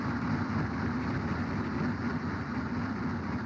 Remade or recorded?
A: recorded